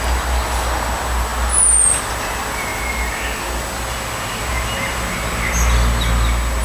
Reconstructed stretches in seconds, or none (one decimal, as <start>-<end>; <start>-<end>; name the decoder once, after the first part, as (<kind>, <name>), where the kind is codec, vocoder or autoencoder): none